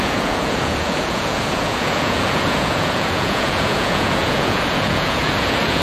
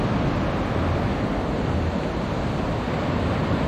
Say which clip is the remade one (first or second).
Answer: first